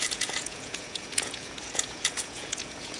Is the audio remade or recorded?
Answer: remade